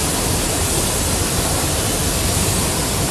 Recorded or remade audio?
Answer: recorded